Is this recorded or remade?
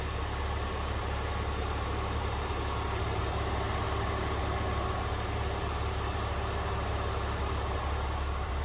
remade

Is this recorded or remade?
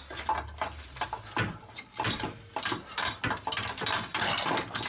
recorded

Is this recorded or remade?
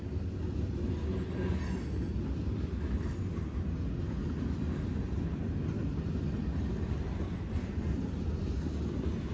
recorded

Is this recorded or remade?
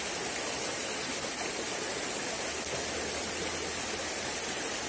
recorded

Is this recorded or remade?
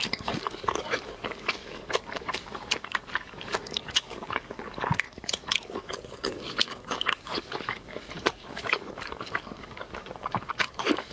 remade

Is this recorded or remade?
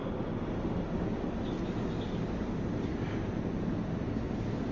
recorded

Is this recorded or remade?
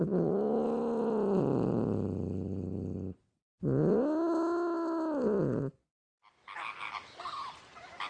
recorded